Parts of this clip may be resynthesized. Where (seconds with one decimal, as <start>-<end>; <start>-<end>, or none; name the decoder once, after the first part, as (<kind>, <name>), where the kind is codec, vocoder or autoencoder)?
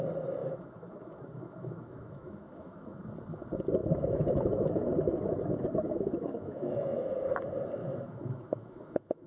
0.4-3.1 (autoencoder, DAC-VAE); 3.8-7.1; 7.8-9.3